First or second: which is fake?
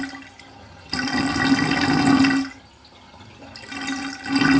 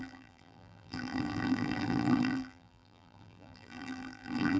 second